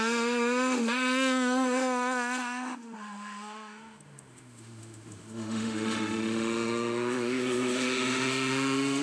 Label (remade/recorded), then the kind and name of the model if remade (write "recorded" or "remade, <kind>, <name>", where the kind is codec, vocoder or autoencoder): remade, autoencoder, DAC-VAE